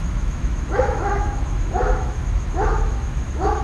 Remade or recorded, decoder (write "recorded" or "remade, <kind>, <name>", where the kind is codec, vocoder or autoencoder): remade, autoencoder, DAC-VAE